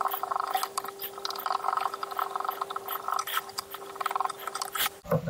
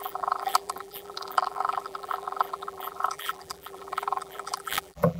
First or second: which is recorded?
first